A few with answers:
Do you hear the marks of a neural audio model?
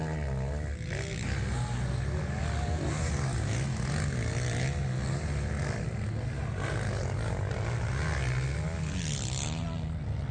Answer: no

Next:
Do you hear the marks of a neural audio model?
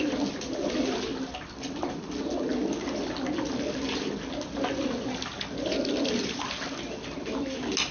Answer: no